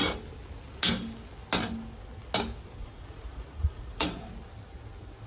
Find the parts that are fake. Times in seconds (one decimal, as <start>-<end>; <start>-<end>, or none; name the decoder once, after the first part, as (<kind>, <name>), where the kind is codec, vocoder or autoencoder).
2.8-4.2 (vocoder, Vocos)